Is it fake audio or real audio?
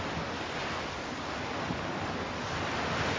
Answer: real